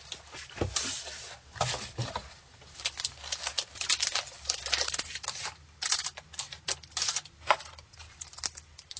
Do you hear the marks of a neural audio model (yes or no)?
no